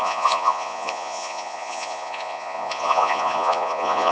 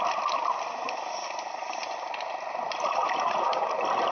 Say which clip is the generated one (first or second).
first